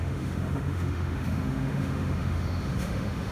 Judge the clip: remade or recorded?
remade